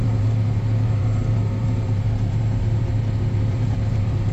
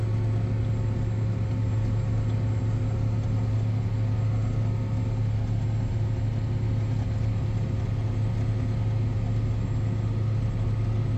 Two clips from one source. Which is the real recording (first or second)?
second